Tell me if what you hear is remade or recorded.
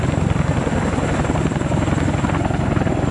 recorded